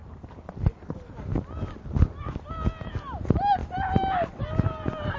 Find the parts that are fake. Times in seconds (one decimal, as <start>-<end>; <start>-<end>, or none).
none